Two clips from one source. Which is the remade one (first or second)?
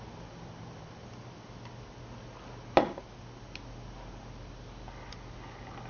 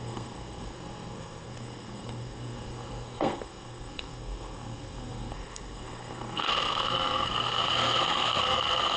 second